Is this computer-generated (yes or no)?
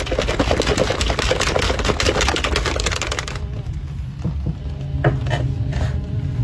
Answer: no